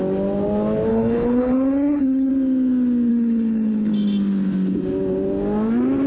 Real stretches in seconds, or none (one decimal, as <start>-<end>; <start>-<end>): 0.0-0.9; 2.3-3.1; 3.9-6.1

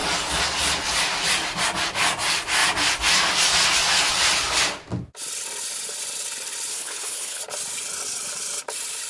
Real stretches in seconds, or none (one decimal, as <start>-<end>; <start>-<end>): 0.0-6.7; 7.4-9.1

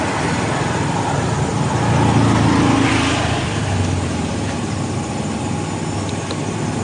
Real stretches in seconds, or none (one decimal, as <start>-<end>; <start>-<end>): 0.0-6.8